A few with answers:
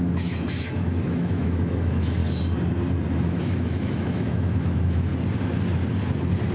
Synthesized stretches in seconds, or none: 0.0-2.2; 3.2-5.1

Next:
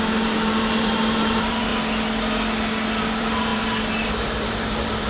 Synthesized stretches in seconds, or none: 0.0-1.7; 3.0-5.1